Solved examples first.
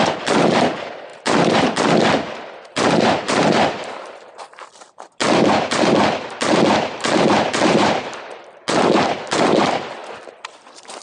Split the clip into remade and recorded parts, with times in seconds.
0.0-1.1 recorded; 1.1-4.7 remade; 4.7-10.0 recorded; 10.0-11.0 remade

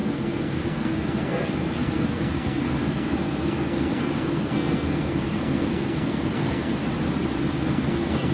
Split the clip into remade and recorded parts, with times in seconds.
0.0-6.8 remade; 6.8-7.5 recorded; 7.5-8.3 remade

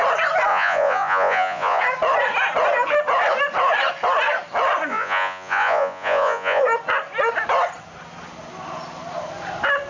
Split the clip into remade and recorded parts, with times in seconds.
0.0-0.5 recorded; 0.5-1.8 remade; 1.8-4.9 recorded; 4.9-6.6 remade; 6.6-9.9 recorded

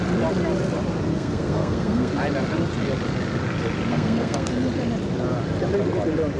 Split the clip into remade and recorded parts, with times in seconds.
0.0-1.1 recorded; 1.1-2.1 remade; 2.1-3.9 recorded; 3.9-4.5 remade; 4.5-6.4 recorded

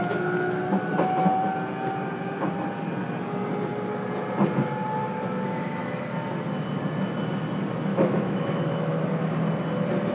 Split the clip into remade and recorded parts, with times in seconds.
0.0-7.9 recorded; 7.9-9.3 remade; 9.3-10.1 recorded

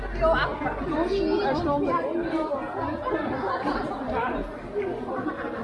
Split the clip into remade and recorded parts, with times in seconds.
0.0-5.6 recorded